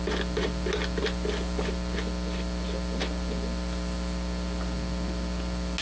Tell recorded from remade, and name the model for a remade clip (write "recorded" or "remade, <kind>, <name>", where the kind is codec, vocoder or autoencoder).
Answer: recorded